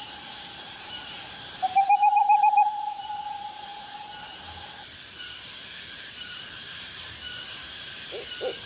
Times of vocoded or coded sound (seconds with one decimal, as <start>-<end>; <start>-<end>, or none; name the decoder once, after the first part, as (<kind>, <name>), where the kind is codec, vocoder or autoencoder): 0.0-3.7 (vocoder, BigVGAN v2); 6.0-8.7